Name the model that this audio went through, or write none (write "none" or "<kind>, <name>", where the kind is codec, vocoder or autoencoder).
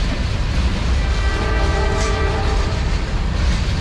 none